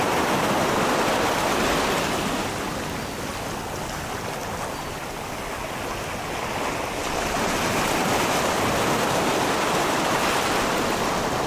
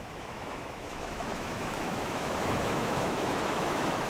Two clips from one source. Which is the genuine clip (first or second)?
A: first